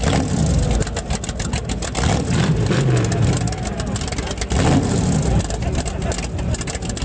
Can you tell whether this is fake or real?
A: real